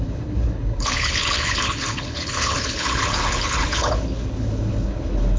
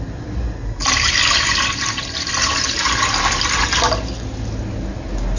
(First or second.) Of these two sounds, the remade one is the first